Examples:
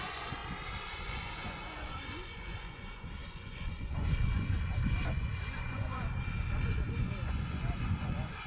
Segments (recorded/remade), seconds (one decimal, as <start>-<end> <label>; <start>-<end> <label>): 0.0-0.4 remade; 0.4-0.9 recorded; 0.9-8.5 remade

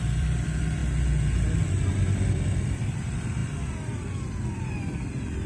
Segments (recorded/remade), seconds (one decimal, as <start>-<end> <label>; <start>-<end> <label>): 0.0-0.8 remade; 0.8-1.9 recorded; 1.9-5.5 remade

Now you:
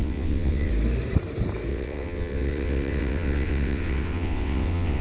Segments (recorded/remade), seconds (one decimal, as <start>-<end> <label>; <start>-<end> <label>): 0.0-0.7 remade; 0.7-1.7 recorded; 1.7-5.0 remade

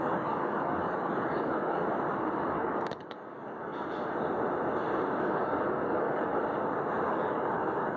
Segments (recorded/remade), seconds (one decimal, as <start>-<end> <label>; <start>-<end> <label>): 0.0-1.8 remade; 1.8-2.5 recorded; 2.5-3.7 remade; 3.7-5.2 recorded; 5.2-6.3 remade; 6.3-7.1 recorded; 7.1-8.0 remade

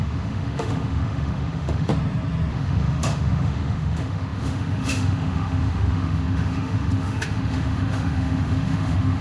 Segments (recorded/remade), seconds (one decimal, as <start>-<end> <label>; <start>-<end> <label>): 0.0-1.9 remade; 1.9-2.5 recorded; 2.5-9.2 remade

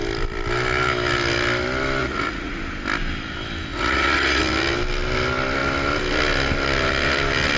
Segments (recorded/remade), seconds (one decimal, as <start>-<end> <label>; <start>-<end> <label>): 0.0-2.0 recorded; 2.0-2.6 remade; 2.6-3.7 recorded; 3.7-4.4 remade; 4.4-7.6 recorded

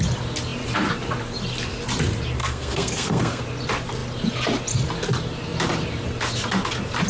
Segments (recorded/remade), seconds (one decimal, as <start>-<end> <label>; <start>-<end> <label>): 0.0-2.4 recorded; 2.4-3.4 remade; 3.4-7.1 recorded